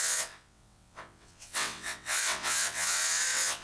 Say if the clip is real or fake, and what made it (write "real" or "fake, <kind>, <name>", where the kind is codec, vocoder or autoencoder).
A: fake, vocoder, WaveNeXt